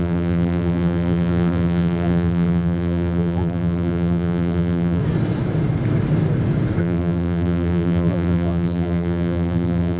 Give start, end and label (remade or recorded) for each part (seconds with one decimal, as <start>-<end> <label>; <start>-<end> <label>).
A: 0.0-5.0 remade; 5.0-6.8 recorded; 6.8-10.0 remade